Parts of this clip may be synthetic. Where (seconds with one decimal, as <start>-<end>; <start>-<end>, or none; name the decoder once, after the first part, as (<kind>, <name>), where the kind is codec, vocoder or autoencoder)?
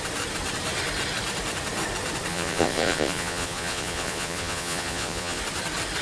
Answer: 2.3-5.4 (vocoder, Vocos)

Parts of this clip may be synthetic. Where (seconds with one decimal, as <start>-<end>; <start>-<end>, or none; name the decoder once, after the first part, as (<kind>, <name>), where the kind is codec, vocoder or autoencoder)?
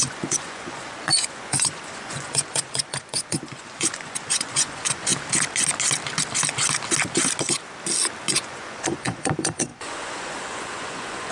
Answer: 0.0-5.1 (vocoder, Vocos); 8.3-11.3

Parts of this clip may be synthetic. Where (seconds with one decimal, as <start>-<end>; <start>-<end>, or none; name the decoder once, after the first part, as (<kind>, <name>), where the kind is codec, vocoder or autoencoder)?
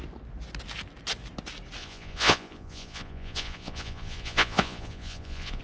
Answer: 1.8-5.6 (vocoder, Vocos)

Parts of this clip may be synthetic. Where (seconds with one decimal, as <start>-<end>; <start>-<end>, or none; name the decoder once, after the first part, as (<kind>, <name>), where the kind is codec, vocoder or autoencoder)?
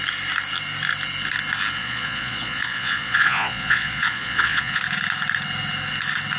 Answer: 1.8-4.8 (vocoder, Vocos)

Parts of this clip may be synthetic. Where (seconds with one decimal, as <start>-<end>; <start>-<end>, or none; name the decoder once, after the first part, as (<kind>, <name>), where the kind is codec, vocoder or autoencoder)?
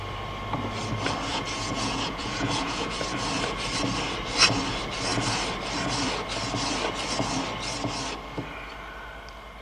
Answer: 1.3-3.0 (vocoder, Vocos)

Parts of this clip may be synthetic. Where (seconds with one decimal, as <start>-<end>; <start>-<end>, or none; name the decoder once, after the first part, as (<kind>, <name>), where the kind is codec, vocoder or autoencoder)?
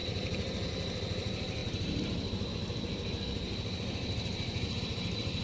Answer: none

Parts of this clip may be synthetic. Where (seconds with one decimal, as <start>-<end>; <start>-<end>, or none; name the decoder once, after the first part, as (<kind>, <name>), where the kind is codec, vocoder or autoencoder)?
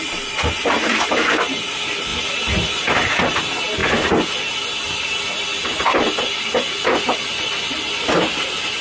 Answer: none